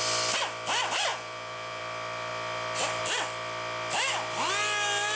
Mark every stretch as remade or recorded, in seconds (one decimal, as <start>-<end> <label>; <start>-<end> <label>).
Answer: 0.0-1.1 recorded; 1.1-1.8 remade; 1.8-5.2 recorded